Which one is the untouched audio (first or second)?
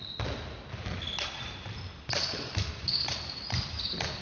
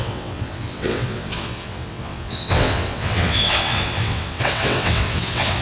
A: first